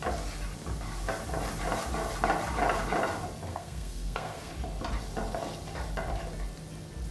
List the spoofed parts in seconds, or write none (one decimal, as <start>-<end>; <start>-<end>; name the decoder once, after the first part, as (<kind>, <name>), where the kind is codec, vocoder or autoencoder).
3.5-4.5 (codec, SNAC)